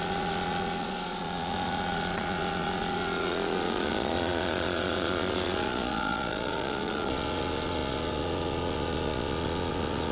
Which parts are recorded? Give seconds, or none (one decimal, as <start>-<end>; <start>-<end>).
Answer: none